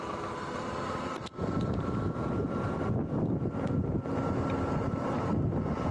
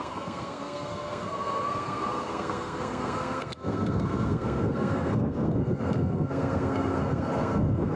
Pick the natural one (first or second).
first